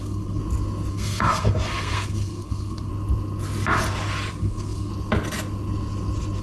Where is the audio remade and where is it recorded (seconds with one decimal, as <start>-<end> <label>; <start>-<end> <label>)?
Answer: 0.0-0.4 remade; 0.4-0.9 recorded; 0.9-2.9 remade; 2.9-4.3 recorded; 4.3-4.9 remade; 4.9-6.4 recorded